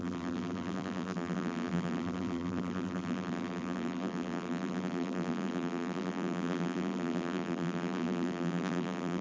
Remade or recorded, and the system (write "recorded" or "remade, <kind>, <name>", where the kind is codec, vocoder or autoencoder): remade, vocoder, BigVGAN v2